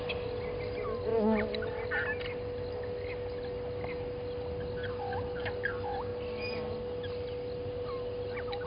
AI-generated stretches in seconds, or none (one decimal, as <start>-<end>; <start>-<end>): none